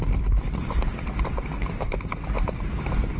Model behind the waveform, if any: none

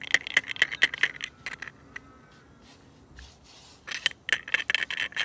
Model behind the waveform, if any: none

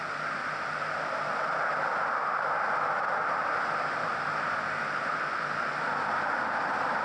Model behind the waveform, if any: none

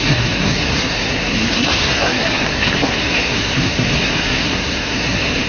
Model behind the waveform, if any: codec, SNAC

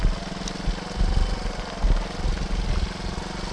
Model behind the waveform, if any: none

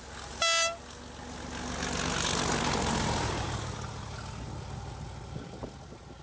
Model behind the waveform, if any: none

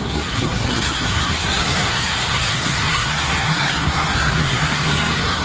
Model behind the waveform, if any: codec, SNAC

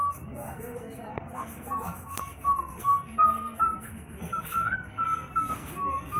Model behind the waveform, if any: codec, SNAC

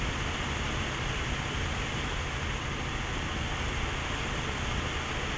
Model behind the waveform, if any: none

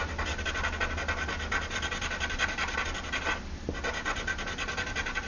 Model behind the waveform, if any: none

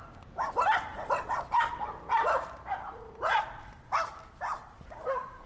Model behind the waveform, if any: none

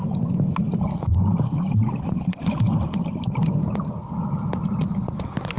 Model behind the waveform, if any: none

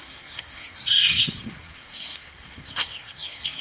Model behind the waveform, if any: codec, SNAC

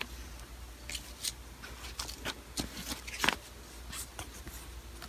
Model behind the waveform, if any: none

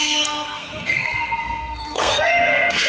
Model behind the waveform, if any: codec, SNAC